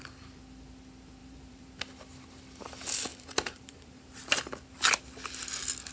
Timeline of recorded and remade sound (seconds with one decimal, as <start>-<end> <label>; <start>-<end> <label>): 0.0-1.2 recorded; 1.2-1.7 remade; 1.7-3.1 recorded; 3.1-4.2 remade; 4.2-5.9 recorded

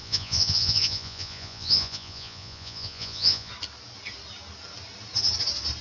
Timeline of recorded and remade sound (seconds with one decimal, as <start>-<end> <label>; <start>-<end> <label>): 0.0-3.5 remade; 3.5-5.8 recorded

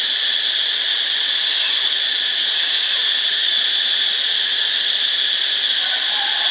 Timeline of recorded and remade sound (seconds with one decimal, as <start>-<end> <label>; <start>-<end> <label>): 0.0-6.5 recorded